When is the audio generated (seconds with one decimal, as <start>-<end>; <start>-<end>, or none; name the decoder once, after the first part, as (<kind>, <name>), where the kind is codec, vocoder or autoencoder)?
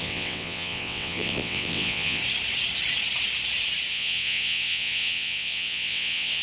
0.0-2.2 (vocoder, WaveNeXt); 3.9-6.4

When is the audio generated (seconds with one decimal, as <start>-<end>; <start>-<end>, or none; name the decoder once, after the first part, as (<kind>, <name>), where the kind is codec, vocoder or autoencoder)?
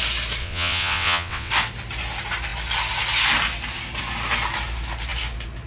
0.4-1.5 (vocoder, WaveNeXt)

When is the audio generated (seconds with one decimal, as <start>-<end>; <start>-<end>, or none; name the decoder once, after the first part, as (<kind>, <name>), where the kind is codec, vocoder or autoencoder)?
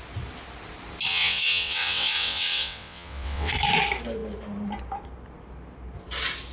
1.1-3.5 (vocoder, WaveNeXt)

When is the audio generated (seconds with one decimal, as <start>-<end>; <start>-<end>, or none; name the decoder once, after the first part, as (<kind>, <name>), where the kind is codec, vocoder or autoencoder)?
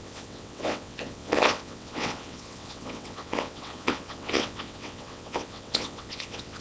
0.0-6.6 (vocoder, WaveNeXt)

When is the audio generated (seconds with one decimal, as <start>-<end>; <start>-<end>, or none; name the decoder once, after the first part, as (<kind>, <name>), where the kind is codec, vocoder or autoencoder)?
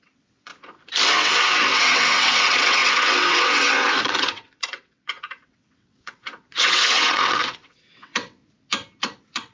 0.0-0.5 (vocoder, WaveNeXt); 1.1-8.4; 9.0-9.5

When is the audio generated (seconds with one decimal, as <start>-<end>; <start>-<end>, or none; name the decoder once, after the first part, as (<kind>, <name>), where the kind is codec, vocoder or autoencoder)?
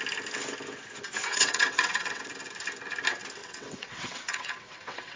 1.3-2.2 (vocoder, WaveNeXt); 3.4-5.2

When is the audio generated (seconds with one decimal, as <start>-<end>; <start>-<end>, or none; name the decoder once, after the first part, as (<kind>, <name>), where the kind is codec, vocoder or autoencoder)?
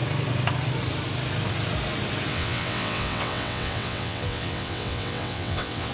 2.3-5.9 (vocoder, WaveNeXt)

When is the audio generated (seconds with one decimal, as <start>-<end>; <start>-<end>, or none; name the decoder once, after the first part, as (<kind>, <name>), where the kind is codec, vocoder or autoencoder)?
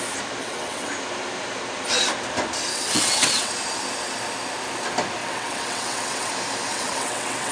0.4-0.9 (vocoder, WaveNeXt); 2.7-3.5; 5.2-6.3; 6.7-7.5